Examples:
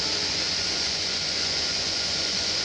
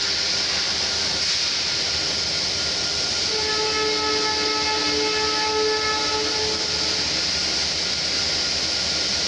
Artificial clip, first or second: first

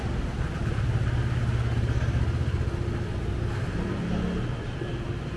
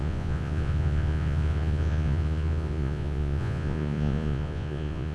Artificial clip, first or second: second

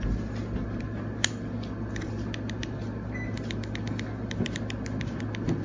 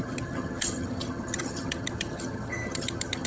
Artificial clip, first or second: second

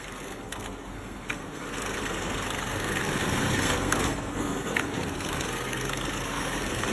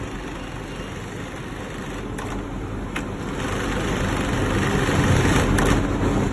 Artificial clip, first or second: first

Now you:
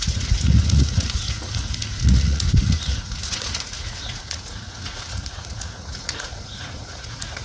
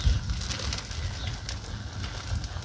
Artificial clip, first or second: first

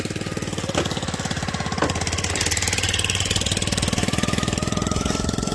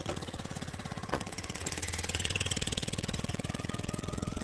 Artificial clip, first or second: second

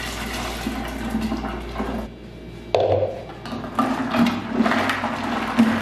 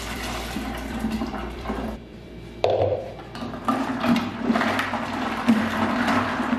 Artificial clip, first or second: second